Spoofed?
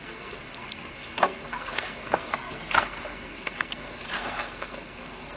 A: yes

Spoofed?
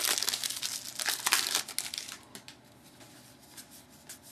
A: no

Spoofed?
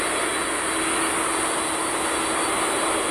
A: no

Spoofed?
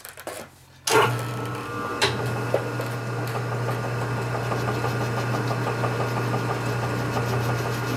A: no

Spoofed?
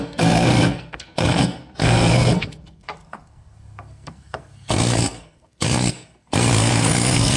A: yes